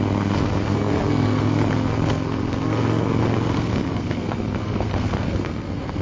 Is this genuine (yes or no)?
no